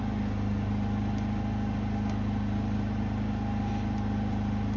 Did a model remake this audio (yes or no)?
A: no